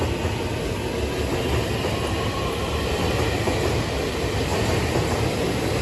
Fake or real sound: real